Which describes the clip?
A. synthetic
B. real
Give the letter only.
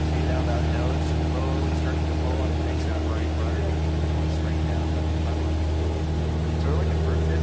B